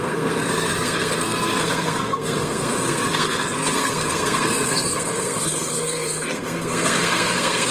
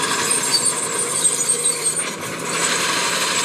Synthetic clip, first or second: first